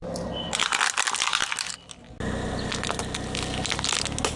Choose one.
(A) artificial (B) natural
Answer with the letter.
B